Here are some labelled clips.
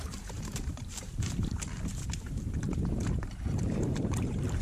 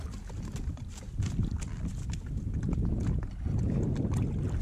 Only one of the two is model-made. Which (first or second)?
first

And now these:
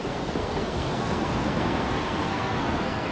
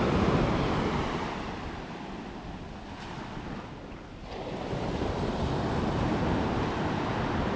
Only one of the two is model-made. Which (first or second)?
first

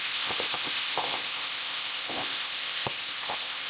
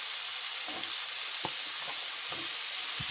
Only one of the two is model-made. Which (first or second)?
first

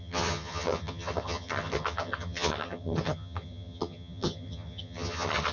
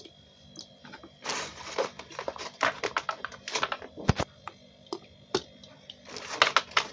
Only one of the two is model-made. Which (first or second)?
first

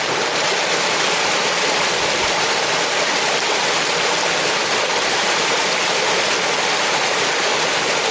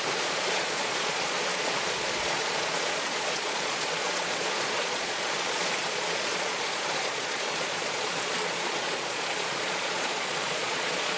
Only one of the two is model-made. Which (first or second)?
second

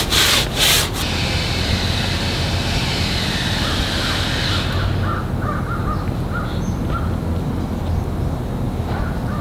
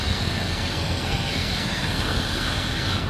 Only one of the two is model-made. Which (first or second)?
second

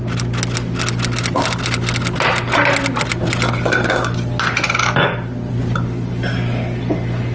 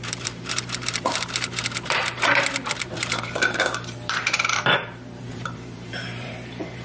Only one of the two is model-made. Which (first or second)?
second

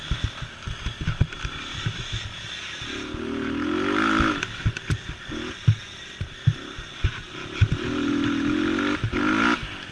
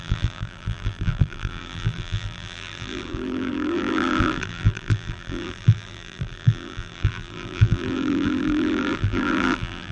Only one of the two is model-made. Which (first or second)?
second